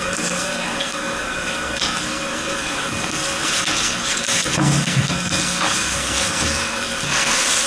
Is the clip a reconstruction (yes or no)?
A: yes